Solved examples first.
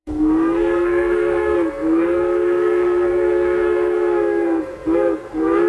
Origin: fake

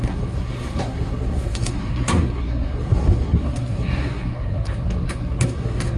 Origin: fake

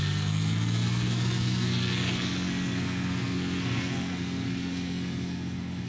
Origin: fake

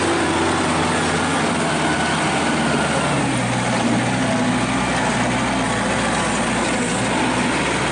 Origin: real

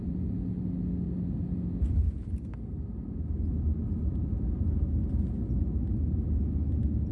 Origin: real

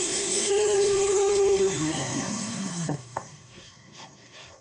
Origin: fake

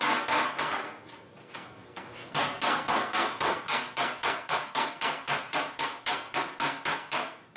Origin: fake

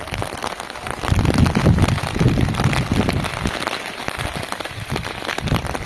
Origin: real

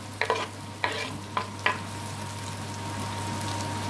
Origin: real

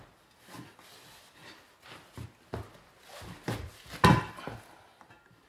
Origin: real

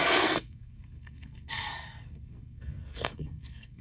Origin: fake